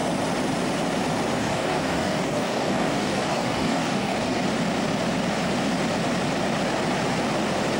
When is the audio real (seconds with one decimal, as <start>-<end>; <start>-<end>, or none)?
0.0-1.4; 4.4-7.8